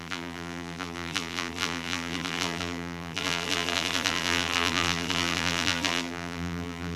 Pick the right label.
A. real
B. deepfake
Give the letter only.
B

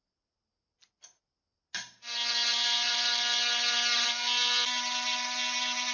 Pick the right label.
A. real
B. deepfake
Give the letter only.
A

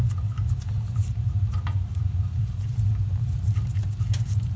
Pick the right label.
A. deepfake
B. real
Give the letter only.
B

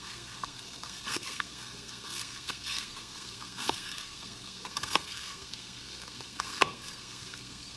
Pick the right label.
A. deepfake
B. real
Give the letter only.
A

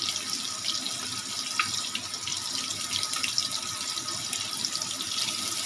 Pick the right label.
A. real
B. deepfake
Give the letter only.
A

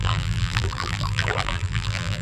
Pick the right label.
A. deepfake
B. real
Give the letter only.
A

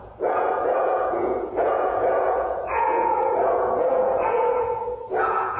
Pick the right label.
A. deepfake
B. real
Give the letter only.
A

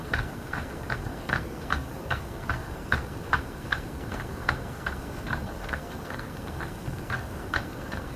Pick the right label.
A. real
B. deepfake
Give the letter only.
B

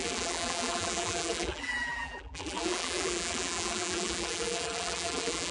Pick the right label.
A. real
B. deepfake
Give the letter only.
B